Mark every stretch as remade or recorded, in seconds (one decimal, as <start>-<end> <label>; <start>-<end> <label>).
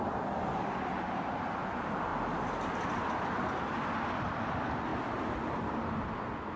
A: 0.0-6.6 recorded